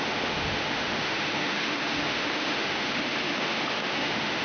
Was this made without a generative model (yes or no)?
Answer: no